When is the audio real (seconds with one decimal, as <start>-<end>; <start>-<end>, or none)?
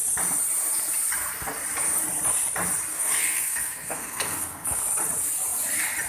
0.0-2.9; 4.8-6.1